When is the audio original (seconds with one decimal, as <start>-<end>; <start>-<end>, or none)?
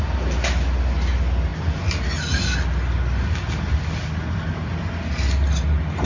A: 0.0-6.0